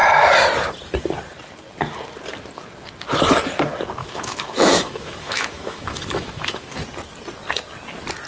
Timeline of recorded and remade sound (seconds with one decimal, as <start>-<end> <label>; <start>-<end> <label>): 0.0-4.0 recorded; 4.0-6.8 remade; 6.8-8.3 recorded